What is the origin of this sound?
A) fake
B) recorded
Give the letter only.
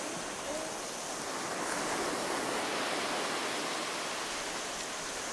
B